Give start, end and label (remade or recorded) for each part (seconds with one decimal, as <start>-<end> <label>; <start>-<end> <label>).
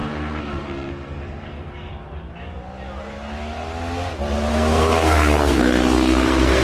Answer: 0.0-1.9 remade; 1.9-4.5 recorded; 4.5-6.6 remade